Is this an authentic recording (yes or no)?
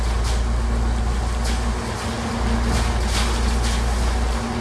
yes